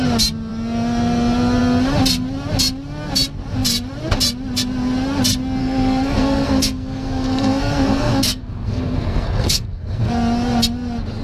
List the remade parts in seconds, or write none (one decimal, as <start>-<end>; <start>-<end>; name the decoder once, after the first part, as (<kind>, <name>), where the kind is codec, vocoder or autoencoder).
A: 5.6-10.1 (codec, SNAC)